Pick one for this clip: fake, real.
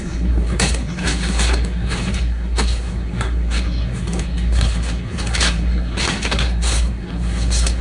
fake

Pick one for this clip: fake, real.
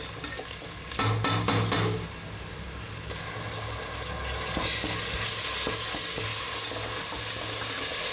real